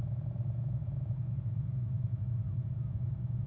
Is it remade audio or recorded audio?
remade